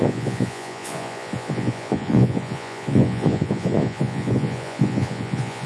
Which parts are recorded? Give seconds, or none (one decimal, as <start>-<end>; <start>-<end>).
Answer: none